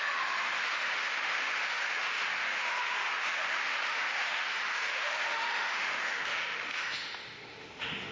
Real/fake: fake